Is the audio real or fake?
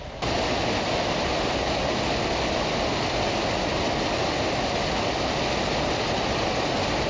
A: real